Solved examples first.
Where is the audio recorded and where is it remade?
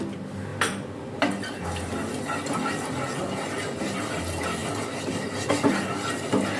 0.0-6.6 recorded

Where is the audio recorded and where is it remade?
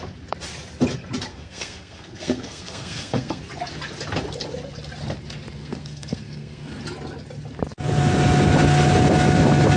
0.0-1.3 recorded; 1.3-3.4 remade; 3.4-5.6 recorded; 5.6-6.8 remade; 6.8-9.8 recorded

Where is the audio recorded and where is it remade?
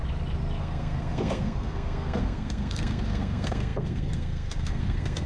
0.0-0.6 recorded; 0.6-5.3 remade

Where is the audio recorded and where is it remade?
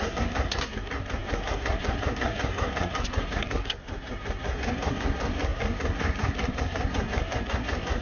0.0-8.0 remade